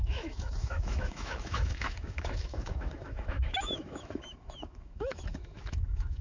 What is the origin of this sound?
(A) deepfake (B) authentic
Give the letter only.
A